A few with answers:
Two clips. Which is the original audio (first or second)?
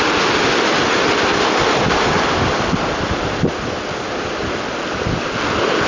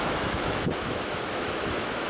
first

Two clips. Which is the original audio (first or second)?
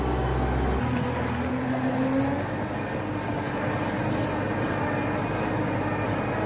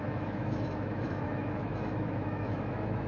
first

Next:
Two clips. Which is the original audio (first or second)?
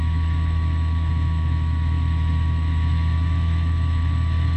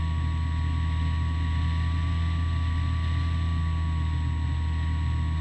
second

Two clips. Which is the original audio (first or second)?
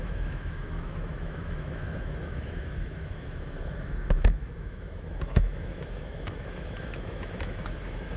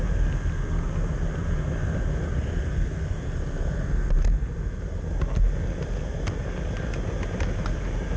second